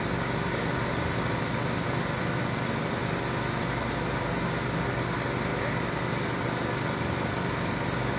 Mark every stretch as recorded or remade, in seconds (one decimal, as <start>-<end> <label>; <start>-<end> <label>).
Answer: 0.0-8.2 recorded